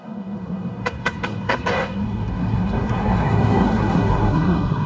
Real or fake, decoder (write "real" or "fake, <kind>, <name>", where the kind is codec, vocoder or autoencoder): fake, codec, SNAC